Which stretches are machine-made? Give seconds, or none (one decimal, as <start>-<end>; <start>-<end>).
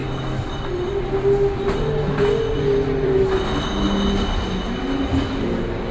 none